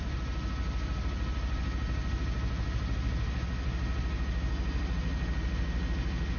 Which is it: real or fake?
real